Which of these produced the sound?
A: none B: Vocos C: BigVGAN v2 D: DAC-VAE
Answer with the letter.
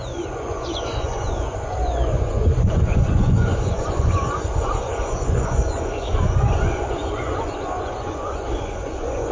B